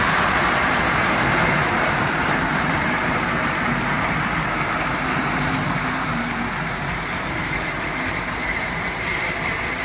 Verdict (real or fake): fake